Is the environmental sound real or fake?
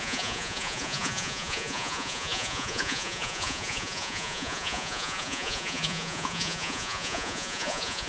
fake